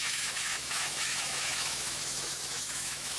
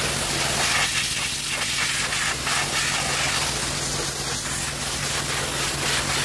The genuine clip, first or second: second